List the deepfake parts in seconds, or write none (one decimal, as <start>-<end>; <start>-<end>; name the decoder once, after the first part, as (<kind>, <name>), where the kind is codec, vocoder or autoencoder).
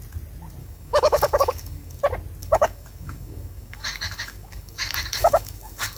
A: 0.6-2.0 (codec, DAC); 2.4-6.0